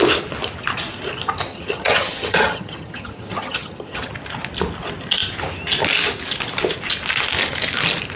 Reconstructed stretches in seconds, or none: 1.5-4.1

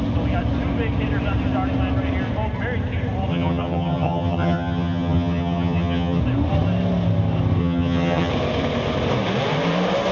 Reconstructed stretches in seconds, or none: 3.3-6.2; 7.6-8.3

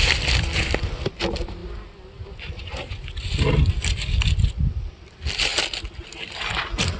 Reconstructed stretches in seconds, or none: none

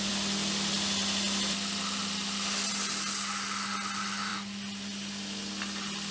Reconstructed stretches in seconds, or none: none

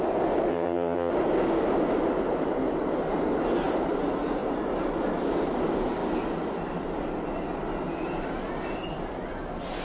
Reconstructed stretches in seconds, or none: 0.5-1.1

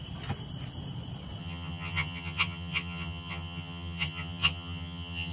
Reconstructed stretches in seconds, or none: 1.4-5.3